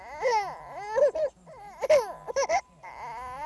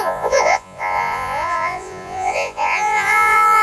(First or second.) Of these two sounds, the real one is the first